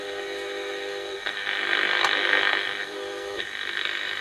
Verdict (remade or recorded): remade